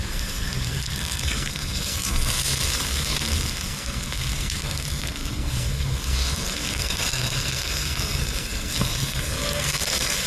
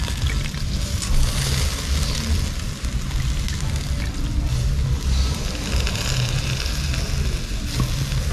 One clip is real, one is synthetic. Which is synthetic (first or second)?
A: first